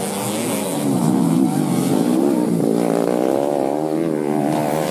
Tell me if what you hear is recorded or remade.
recorded